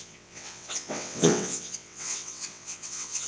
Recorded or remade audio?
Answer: remade